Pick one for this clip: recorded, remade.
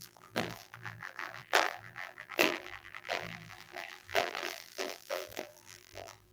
remade